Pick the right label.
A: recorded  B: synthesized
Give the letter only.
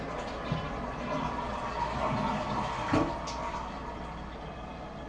A